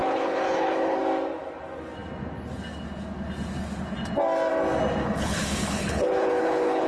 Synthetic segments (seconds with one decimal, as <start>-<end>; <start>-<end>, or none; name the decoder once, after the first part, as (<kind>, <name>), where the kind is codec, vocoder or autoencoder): 0.0-1.0 (codec, HILCodec); 5.0-6.9